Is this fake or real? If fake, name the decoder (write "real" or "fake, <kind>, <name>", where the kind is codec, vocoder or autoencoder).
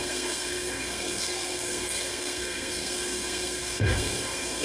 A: fake, codec, SNAC